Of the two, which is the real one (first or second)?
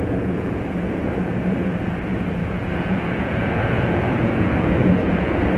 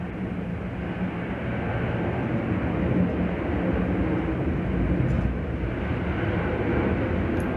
second